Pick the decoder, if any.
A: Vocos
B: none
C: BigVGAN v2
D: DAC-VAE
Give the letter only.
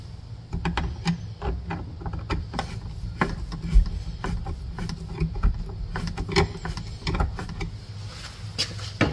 B